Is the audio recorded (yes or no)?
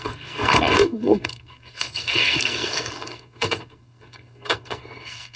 no